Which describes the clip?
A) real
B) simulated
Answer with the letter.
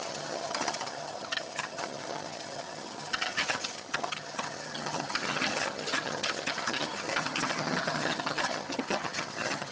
B